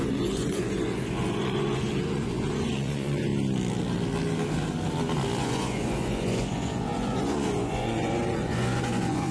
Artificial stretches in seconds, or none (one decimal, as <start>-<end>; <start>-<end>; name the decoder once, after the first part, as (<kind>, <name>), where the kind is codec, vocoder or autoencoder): 0.0-3.3 (vocoder, Vocos); 5.4-9.3